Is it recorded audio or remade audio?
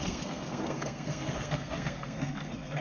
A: remade